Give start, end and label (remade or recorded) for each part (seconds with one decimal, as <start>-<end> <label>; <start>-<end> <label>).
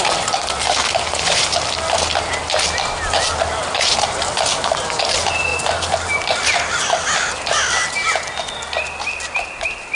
0.0-9.9 recorded